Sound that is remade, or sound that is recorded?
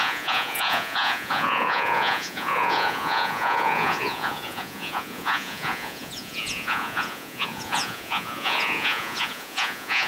remade